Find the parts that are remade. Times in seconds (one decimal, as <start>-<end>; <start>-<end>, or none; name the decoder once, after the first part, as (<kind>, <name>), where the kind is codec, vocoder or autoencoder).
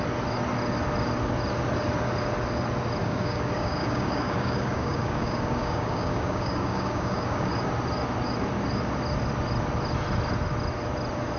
3.0-7.5 (codec, DAC)